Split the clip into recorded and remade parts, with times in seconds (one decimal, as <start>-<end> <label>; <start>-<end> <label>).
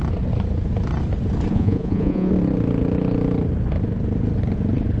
0.0-1.5 recorded; 1.5-2.3 remade; 2.3-5.0 recorded